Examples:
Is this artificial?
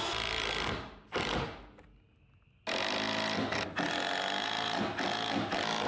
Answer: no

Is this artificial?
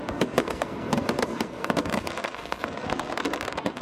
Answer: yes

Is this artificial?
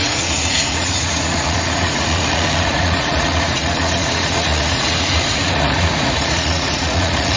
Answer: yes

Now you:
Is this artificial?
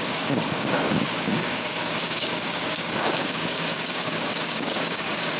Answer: yes